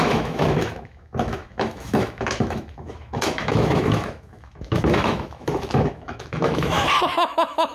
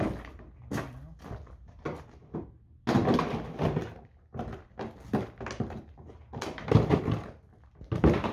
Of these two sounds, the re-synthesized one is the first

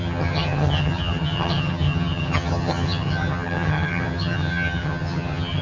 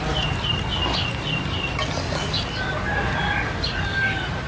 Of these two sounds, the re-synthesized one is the first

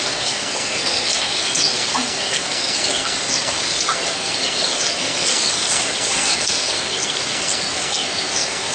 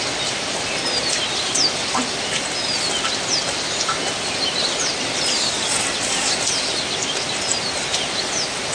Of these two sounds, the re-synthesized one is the first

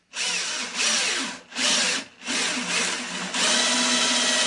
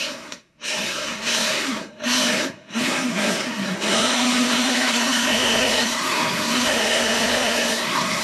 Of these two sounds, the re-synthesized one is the second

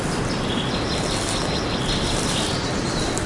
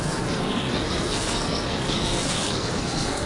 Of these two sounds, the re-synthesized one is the second